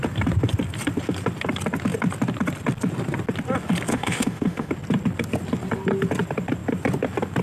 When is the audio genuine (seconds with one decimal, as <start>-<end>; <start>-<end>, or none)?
0.0-3.9; 4.7-7.4